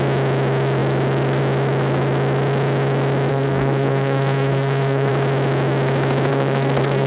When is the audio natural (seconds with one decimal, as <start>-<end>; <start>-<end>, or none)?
0.0-3.3; 5.1-6.3